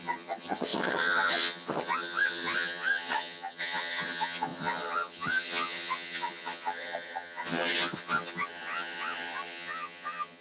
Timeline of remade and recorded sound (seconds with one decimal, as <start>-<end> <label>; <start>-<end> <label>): 0.0-10.4 remade

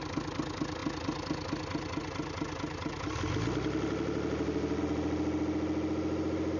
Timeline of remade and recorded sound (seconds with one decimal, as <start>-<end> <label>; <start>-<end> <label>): 0.0-6.6 recorded

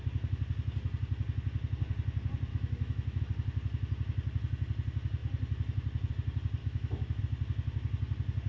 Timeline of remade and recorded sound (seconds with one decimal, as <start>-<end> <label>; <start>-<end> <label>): 0.0-2.5 recorded; 2.5-3.2 remade; 3.2-6.6 recorded; 6.6-7.2 remade; 7.2-8.5 recorded

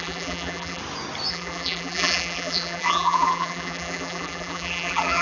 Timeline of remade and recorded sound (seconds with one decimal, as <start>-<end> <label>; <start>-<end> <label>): 0.0-0.8 remade; 0.8-1.3 recorded; 1.3-5.2 remade

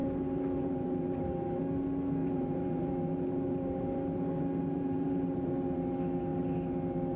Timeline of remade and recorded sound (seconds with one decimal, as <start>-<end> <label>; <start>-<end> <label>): 0.0-1.6 remade; 1.6-2.2 recorded; 2.2-5.5 remade; 5.5-7.2 recorded

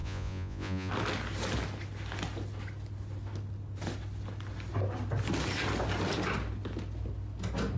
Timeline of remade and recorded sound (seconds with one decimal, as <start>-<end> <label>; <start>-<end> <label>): 0.0-0.9 remade; 0.9-7.8 recorded

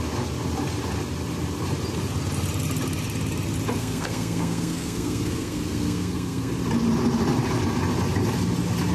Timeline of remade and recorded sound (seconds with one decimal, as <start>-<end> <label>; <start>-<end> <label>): 0.0-3.8 recorded; 3.8-6.5 remade; 6.5-8.9 recorded

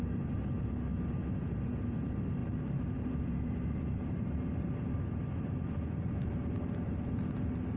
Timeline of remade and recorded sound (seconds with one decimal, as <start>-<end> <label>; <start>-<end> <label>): 0.0-2.4 recorded; 2.4-7.1 remade; 7.1-7.8 recorded